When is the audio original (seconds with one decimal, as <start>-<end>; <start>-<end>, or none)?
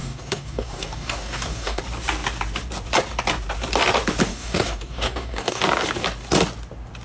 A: 1.8-4.3; 5.6-7.0